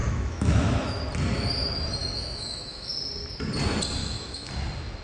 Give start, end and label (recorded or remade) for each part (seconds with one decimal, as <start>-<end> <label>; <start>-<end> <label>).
0.0-1.0 remade; 1.0-2.0 recorded; 2.0-2.9 remade; 2.9-4.0 recorded; 4.0-4.5 remade; 4.5-5.0 recorded